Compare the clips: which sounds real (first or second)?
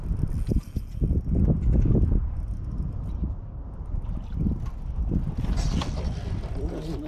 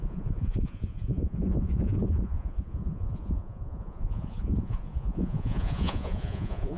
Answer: first